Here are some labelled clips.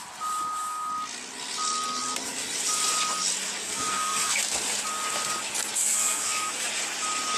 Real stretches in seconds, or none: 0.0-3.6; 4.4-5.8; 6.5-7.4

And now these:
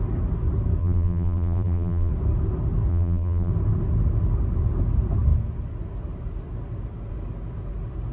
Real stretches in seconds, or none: 0.0-0.8; 2.1-2.9; 3.5-8.1

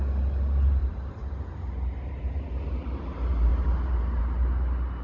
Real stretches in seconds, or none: 0.0-0.8; 2.6-3.5; 4.2-5.0

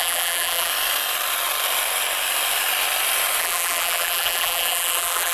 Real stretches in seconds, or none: 0.7-3.4

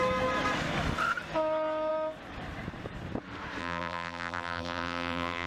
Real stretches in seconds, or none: 0.0-3.6

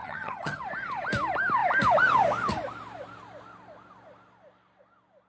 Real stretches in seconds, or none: 0.6-5.3

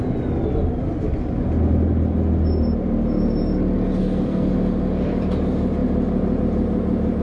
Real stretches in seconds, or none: 0.0-4.0; 4.5-7.2